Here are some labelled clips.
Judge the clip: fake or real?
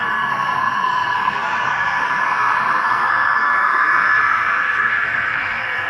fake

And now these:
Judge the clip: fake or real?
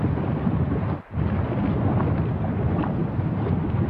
real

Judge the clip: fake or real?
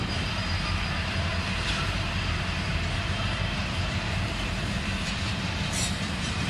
fake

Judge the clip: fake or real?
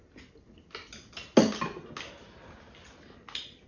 real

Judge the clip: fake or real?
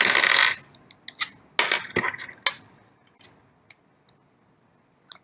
real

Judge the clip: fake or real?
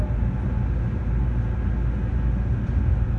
real